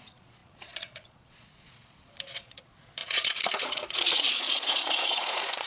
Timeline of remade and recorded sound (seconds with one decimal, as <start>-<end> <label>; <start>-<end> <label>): 0.0-5.7 remade